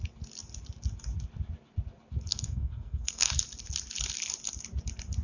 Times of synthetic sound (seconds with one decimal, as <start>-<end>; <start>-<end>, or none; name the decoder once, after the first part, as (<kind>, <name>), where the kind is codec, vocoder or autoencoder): 2.3-3.3 (codec, SNAC)